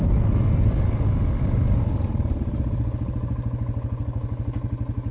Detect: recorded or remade recorded